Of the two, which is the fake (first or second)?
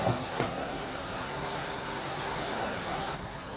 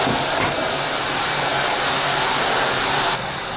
first